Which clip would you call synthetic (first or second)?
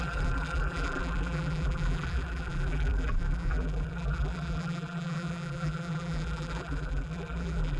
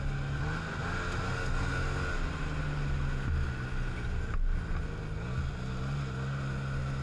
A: first